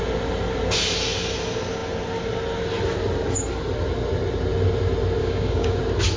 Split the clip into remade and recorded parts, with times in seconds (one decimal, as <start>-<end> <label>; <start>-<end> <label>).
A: 0.0-5.2 recorded; 5.2-5.8 remade; 5.8-6.2 recorded